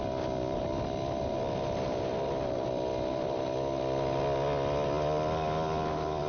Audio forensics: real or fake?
real